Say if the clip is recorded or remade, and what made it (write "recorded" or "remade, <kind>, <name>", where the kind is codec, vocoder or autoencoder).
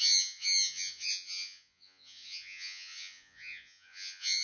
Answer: remade, vocoder, Vocos